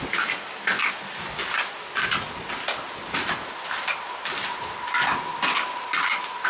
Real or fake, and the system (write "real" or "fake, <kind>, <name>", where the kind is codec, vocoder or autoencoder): real